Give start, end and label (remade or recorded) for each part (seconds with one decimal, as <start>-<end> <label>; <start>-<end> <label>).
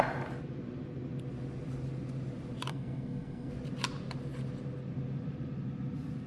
0.0-2.7 recorded; 2.7-3.5 remade; 3.5-6.3 recorded